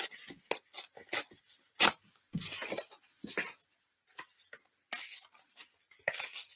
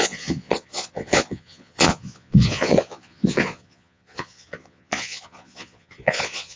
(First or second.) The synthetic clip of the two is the second